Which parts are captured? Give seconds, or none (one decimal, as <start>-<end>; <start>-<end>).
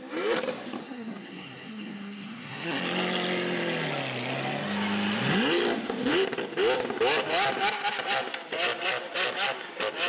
0.0-0.8; 2.8-10.1